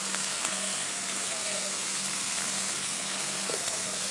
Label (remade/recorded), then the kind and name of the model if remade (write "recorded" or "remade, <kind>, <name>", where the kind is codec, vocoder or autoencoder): remade, codec, SNAC